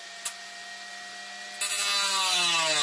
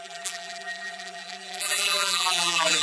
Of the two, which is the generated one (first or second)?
second